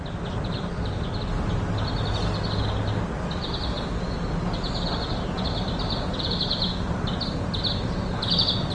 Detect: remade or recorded recorded